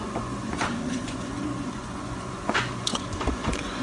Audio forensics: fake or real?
fake